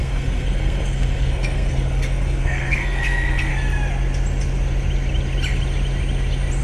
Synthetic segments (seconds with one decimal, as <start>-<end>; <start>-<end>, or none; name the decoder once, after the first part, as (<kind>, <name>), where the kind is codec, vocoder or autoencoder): 0.0-3.5 (codec, SNAC)